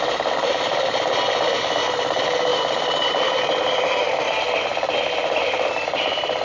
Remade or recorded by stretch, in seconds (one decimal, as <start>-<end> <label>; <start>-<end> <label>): 0.0-6.4 recorded